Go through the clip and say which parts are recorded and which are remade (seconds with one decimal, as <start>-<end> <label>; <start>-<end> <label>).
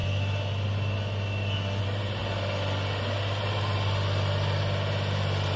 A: 0.0-1.8 recorded; 1.8-2.2 remade; 2.2-5.6 recorded